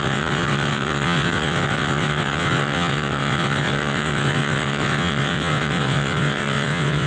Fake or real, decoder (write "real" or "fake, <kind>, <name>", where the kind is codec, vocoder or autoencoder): fake, vocoder, WaveNeXt